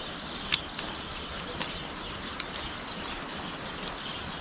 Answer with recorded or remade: recorded